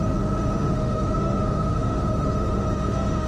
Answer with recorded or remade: remade